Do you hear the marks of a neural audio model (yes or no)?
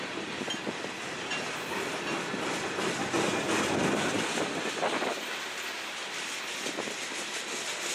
no